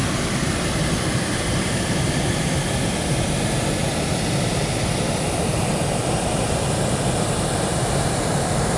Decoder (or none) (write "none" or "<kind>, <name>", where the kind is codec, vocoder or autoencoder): none